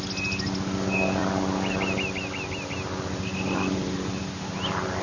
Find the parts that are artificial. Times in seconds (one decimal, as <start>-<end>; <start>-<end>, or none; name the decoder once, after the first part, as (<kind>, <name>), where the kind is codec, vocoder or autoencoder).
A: none